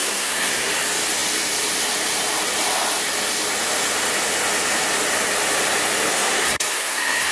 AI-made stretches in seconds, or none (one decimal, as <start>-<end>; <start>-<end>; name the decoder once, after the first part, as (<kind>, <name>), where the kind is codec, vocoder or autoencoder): 0.0-0.7 (codec, SNAC); 6.1-7.3